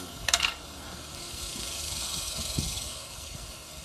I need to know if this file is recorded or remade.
remade